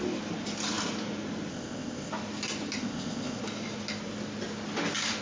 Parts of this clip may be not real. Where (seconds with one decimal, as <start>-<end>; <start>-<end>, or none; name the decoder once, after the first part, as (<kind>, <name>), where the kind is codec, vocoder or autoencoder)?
1.5-2.1 (codec, ZipCodec); 2.8-3.4